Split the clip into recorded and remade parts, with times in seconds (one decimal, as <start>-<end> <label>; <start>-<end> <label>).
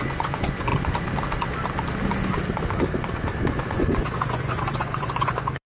0.0-0.7 remade; 0.7-3.4 recorded; 3.4-5.7 remade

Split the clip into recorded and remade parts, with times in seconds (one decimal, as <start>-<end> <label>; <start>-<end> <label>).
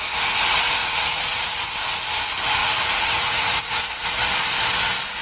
0.0-0.8 recorded; 0.8-1.7 remade; 1.7-2.6 recorded; 2.6-4.1 remade; 4.1-5.2 recorded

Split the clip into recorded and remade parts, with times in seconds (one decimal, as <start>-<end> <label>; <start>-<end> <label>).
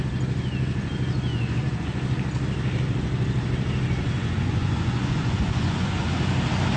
0.0-1.3 recorded; 1.3-1.9 remade; 1.9-4.0 recorded; 4.0-6.2 remade; 6.2-6.8 recorded